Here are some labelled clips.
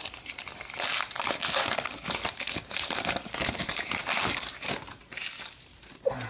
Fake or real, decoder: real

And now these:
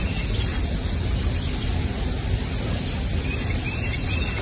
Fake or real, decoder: real